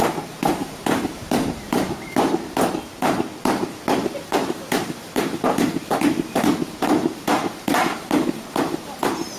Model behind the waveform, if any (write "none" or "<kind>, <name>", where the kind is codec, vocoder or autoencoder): vocoder, BigVGAN v2